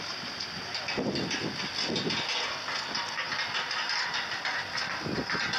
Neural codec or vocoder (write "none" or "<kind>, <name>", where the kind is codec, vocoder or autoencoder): none